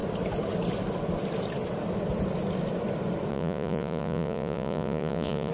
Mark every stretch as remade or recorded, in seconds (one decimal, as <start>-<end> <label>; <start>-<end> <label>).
0.0-3.3 recorded; 3.3-5.5 remade